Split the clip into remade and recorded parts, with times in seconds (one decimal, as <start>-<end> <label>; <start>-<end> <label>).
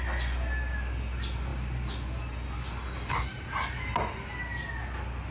0.0-5.3 recorded